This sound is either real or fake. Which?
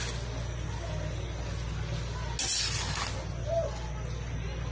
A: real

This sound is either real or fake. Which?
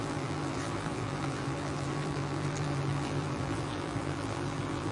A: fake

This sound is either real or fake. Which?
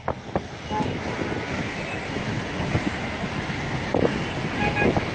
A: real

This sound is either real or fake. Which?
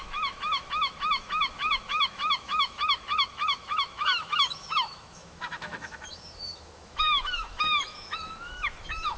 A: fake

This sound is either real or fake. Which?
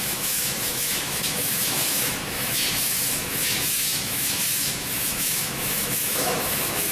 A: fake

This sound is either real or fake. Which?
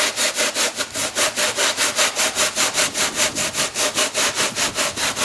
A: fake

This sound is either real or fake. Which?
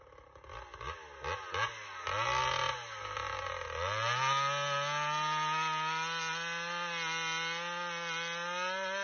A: real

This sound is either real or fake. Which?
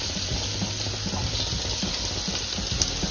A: real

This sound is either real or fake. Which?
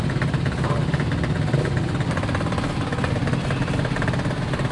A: real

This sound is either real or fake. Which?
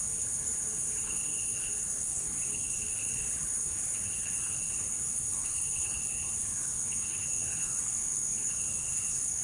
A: fake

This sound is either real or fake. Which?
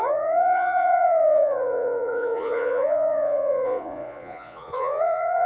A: fake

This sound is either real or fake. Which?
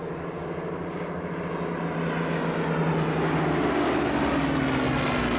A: real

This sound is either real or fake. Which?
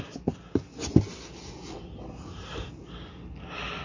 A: real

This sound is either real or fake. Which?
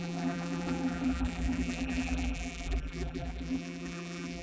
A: fake